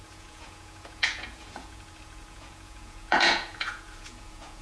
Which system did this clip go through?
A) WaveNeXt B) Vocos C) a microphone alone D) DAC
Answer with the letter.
B